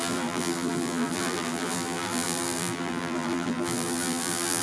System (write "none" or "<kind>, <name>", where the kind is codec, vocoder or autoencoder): vocoder, BigVGAN v2